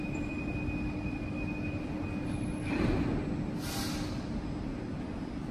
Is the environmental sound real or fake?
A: real